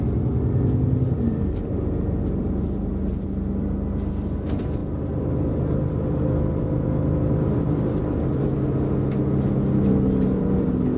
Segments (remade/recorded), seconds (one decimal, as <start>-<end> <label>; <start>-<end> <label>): 0.0-11.0 recorded